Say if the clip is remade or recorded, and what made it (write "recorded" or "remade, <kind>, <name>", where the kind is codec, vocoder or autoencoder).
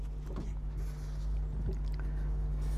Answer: recorded